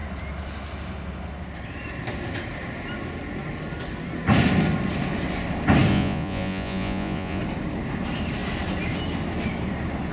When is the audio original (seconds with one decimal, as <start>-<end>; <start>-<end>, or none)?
0.0-5.9; 7.4-10.1